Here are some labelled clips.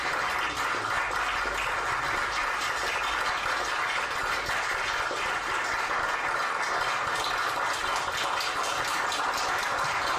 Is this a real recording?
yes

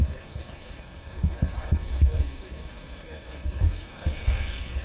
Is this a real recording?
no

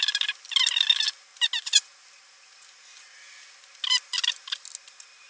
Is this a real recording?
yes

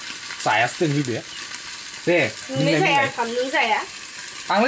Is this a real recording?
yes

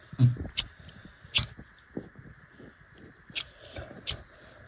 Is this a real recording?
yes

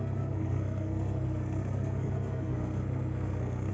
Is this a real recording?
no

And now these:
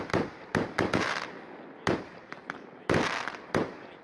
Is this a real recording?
yes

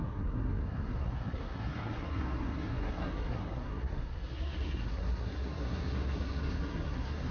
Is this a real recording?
no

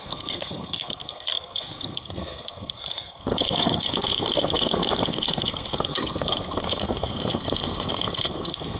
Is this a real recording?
no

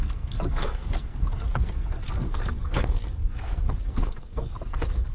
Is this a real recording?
no